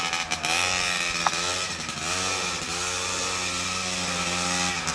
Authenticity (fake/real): fake